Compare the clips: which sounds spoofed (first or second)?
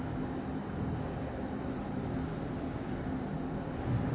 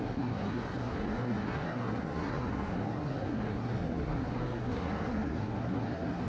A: second